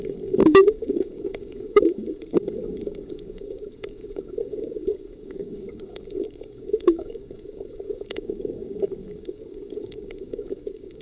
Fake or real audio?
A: fake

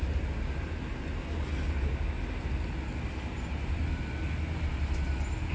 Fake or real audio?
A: real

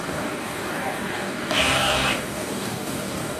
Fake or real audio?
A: fake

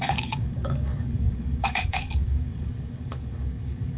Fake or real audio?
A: fake